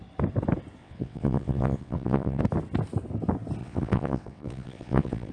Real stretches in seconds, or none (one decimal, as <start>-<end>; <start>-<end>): 0.0-0.8; 2.4-3.6